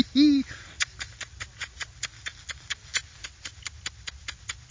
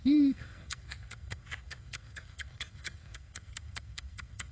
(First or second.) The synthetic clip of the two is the second